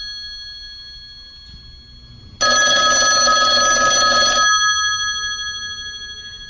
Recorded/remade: recorded